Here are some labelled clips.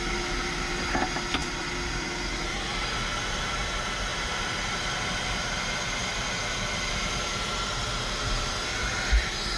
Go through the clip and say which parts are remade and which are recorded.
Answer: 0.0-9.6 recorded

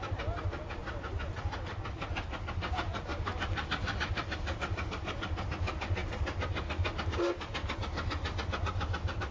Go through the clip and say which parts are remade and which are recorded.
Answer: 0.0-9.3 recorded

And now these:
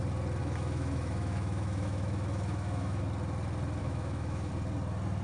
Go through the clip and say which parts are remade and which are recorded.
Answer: 0.0-0.4 recorded; 0.4-3.0 remade; 3.0-3.8 recorded; 3.8-4.5 remade; 4.5-5.2 recorded

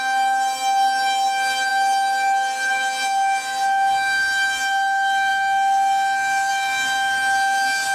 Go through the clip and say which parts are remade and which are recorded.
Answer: 0.0-7.9 recorded

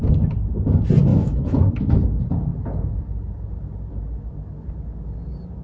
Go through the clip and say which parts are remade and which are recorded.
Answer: 0.0-1.1 recorded; 1.1-2.0 remade; 2.0-5.6 recorded

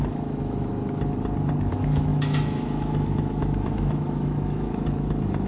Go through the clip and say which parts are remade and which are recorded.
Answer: 0.0-0.7 remade; 0.7-1.7 recorded; 1.7-5.5 remade

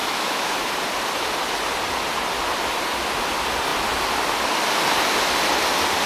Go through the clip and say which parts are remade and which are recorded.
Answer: 0.0-0.7 remade; 0.7-6.1 recorded